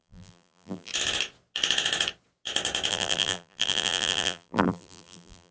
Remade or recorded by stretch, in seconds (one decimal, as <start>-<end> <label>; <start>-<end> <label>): 0.0-0.9 remade; 0.9-2.9 recorded; 2.9-5.5 remade